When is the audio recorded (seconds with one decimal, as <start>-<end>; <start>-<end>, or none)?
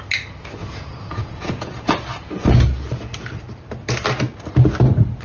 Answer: 0.0-0.6; 1.9-5.2